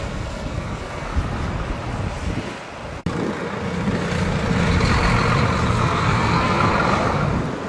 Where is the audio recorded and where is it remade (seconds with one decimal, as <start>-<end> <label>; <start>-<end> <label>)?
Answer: 0.0-1.1 remade; 1.1-5.7 recorded; 5.7-6.7 remade; 6.7-7.7 recorded